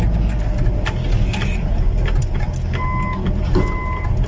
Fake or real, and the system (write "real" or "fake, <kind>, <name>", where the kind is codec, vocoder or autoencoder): real